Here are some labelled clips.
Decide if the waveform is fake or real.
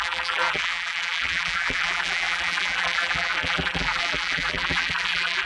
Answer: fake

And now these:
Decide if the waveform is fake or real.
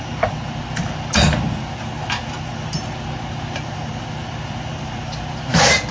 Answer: real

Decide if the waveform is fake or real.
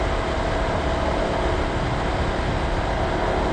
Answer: real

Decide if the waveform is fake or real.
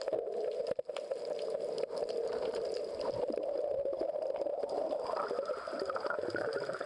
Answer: real